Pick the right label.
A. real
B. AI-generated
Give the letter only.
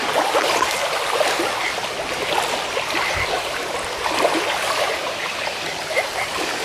A